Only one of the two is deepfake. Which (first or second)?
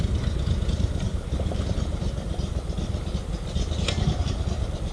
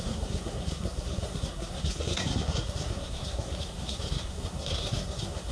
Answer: second